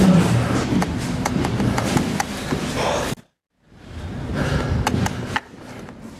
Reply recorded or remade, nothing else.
recorded